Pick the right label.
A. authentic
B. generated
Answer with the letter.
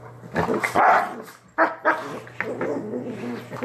A